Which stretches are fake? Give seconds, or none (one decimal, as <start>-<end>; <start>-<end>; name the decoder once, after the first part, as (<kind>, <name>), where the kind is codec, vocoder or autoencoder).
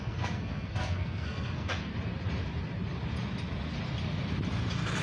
0.0-1.9 (codec, SNAC)